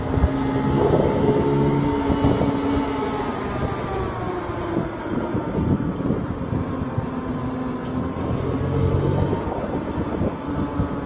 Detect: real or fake real